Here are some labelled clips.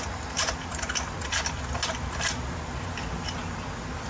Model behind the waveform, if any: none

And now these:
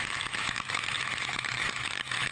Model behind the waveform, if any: autoencoder, DAC-VAE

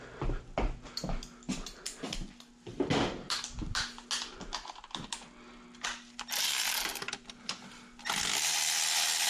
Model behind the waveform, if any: none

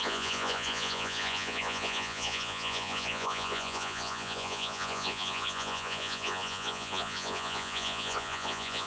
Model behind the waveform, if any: vocoder, Vocos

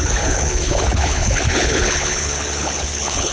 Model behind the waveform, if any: codec, HILCodec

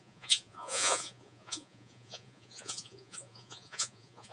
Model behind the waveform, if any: vocoder, Vocos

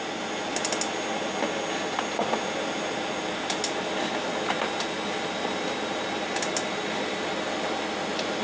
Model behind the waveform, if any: none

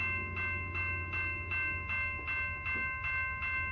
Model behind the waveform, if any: none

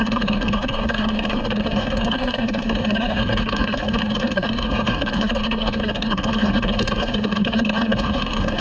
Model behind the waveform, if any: codec, SNAC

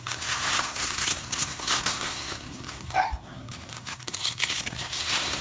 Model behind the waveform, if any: codec, SNAC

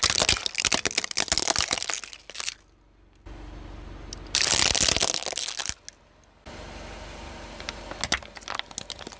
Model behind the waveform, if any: none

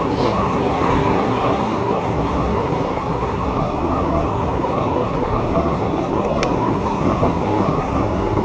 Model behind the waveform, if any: codec, SNAC